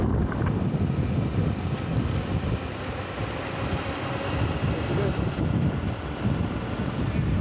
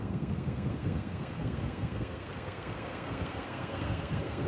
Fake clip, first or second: second